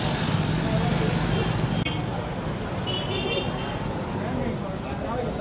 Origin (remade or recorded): recorded